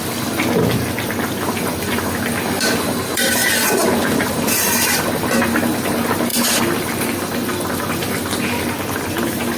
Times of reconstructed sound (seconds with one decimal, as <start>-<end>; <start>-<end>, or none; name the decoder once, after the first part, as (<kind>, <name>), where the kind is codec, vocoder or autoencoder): 0.0-3.4 (vocoder, BigVGAN v2); 4.3-9.6